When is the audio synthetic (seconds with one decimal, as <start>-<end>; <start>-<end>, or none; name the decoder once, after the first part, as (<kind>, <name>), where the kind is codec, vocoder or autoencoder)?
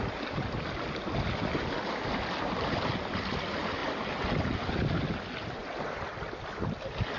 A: none